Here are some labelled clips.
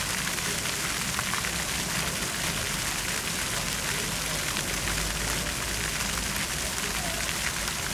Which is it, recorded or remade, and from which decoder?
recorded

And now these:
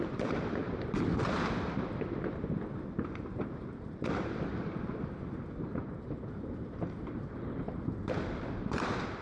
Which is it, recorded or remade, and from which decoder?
remade, vocoder, BigVGAN v2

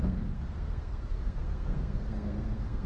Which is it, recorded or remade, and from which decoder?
remade, codec, SNAC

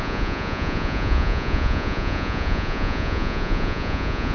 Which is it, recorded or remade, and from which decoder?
remade, vocoder, Vocos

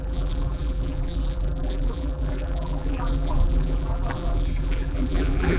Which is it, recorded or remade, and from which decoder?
remade, vocoder, BigVGAN v2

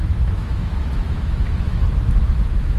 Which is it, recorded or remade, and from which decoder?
remade, autoencoder, DAC-VAE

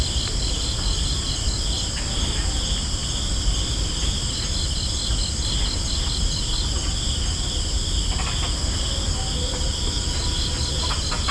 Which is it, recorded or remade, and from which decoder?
recorded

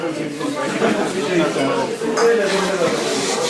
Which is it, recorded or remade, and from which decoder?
recorded